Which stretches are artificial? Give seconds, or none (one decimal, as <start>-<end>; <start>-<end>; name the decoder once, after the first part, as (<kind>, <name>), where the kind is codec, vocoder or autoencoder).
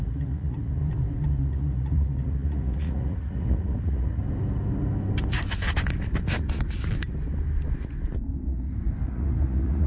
0.0-0.8 (vocoder, Vocos); 1.4-4.2; 9.1-9.9